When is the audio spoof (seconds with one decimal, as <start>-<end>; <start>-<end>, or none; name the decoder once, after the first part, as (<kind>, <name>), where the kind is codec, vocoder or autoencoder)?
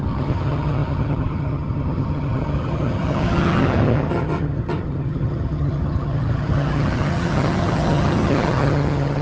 0.0-9.2 (vocoder, HiFi-GAN)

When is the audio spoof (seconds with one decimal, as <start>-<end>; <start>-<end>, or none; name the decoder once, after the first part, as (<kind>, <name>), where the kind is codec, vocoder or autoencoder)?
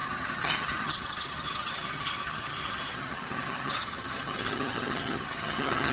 0.0-5.9 (vocoder, HiFi-GAN)